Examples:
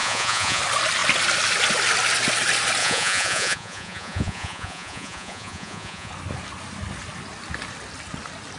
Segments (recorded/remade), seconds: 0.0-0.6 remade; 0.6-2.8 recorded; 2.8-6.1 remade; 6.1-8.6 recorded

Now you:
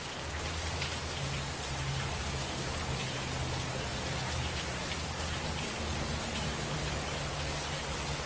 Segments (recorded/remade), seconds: 0.0-8.3 recorded

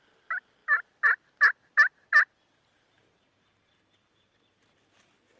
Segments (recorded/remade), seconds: 0.0-5.4 recorded

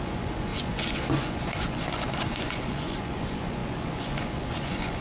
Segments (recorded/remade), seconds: 0.0-5.0 remade

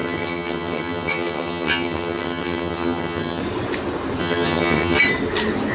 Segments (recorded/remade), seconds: 0.0-3.4 remade; 3.4-4.2 recorded; 4.2-5.0 remade; 5.0-5.7 recorded